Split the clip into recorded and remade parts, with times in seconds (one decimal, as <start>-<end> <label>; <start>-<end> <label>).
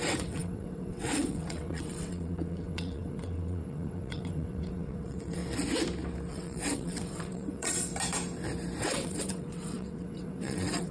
0.0-5.4 remade; 5.4-6.3 recorded; 6.3-7.9 remade; 7.9-8.8 recorded; 8.8-10.9 remade